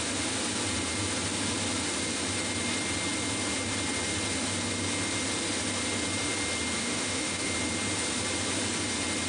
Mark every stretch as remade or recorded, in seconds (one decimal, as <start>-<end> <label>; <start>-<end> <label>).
0.0-6.8 recorded; 6.8-7.5 remade; 7.5-9.3 recorded